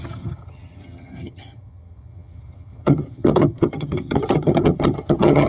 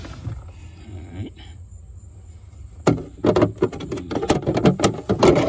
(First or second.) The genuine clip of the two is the second